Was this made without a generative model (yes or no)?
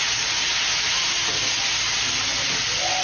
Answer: yes